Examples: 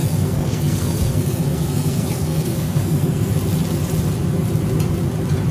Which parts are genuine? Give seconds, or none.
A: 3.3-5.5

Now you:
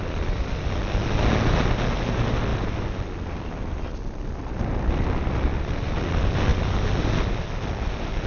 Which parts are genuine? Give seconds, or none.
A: 0.0-8.3

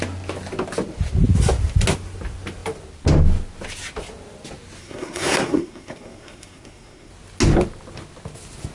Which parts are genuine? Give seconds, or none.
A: 0.0-4.8; 7.1-8.7

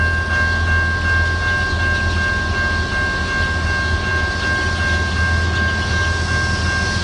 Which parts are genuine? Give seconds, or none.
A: 0.0-7.0

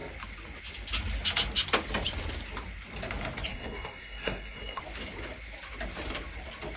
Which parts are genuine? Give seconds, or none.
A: 0.0-3.5; 4.8-6.8

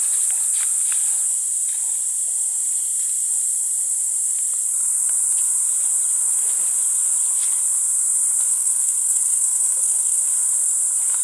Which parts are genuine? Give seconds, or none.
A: 0.0-8.5; 10.2-11.2

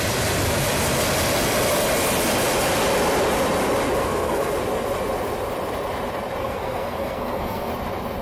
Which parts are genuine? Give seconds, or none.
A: 0.0-4.0; 4.5-6.4; 7.7-8.2

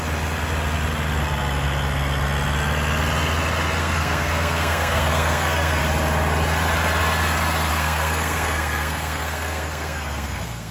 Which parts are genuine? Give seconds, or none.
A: 0.0-3.8; 5.8-7.7